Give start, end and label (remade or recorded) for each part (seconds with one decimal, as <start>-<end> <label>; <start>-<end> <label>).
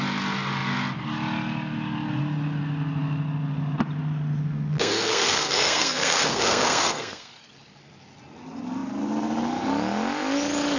0.0-4.4 recorded; 4.4-7.3 remade; 7.3-10.8 recorded